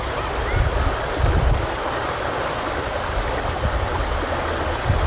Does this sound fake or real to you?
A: real